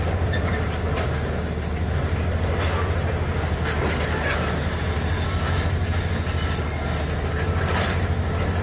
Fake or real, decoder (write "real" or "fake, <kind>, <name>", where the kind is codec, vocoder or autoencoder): real